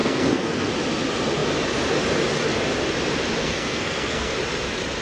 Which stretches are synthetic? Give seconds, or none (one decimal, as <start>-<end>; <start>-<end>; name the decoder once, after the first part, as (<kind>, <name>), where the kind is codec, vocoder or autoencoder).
0.0-0.7 (codec, SNAC); 3.4-4.3